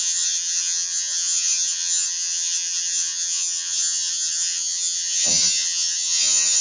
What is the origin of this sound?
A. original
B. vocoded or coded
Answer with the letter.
B